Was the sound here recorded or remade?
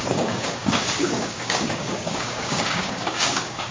remade